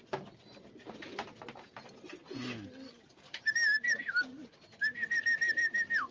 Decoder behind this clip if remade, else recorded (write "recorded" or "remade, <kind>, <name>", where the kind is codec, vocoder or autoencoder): recorded